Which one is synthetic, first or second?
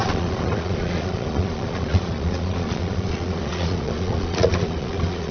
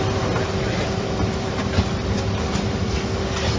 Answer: first